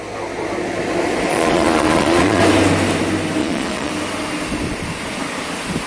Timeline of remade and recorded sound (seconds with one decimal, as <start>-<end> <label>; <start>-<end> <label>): 0.0-1.3 recorded; 1.3-2.4 remade; 2.4-3.4 recorded; 3.4-3.9 remade; 3.9-5.9 recorded